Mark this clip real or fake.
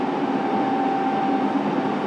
real